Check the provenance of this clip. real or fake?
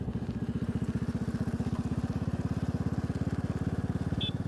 real